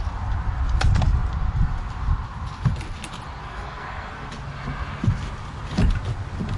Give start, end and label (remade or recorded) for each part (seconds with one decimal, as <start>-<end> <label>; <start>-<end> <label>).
0.0-3.4 recorded; 3.4-4.3 remade; 4.3-6.6 recorded